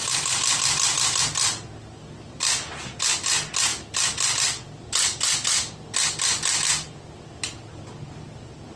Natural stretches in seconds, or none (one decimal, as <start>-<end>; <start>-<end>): 0.0-8.8